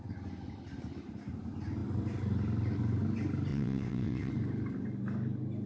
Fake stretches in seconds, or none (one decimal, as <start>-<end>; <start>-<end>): 3.5-4.3